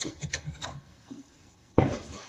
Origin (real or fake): fake